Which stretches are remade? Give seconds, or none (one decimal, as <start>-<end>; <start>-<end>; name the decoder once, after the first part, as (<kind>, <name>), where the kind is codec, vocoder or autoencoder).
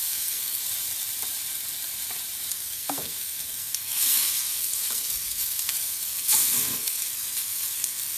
0.0-0.6 (codec, SNAC); 2.5-8.2